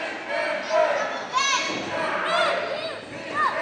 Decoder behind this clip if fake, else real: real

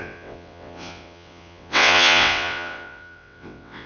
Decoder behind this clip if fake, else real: fake, vocoder, WaveNeXt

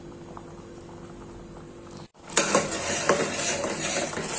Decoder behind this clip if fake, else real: real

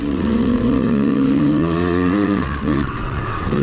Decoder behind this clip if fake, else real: fake, vocoder, WaveNeXt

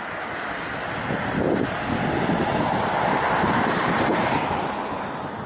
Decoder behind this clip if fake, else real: real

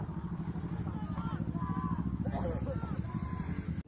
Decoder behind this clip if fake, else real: real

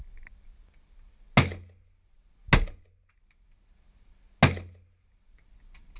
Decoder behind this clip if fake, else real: real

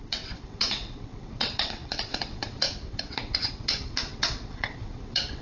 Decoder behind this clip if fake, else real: fake, vocoder, WaveNeXt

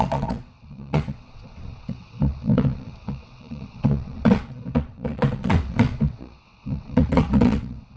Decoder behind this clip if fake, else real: fake, vocoder, WaveNeXt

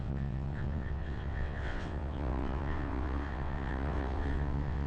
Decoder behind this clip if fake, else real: fake, vocoder, WaveNeXt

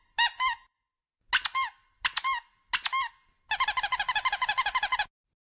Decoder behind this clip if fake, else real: real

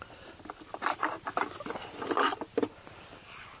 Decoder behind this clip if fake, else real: real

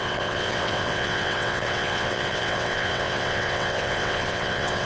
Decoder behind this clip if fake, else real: fake, vocoder, WaveNeXt